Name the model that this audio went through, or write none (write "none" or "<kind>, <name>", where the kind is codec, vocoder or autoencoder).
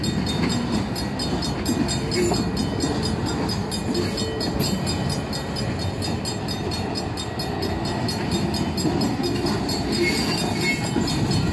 none